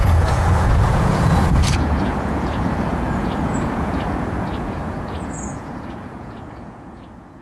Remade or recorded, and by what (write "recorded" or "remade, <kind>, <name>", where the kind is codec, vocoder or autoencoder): remade, vocoder, Vocos